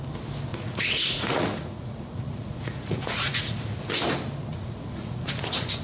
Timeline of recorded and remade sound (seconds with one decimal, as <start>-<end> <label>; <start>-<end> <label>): 0.0-0.5 recorded; 0.5-3.8 remade; 3.8-4.5 recorded; 4.5-5.8 remade